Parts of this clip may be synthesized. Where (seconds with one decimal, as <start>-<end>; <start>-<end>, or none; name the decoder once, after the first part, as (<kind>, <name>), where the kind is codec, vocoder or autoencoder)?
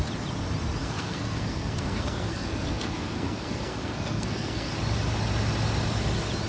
0.8-4.7 (codec, SNAC)